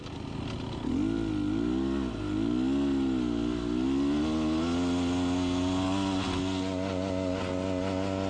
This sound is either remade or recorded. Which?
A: recorded